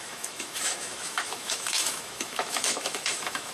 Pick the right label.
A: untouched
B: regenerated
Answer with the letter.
B